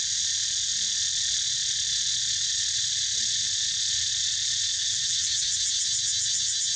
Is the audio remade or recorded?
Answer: recorded